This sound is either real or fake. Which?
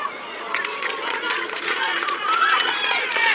fake